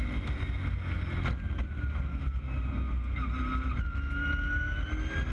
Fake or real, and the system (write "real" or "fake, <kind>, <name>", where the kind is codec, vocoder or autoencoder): real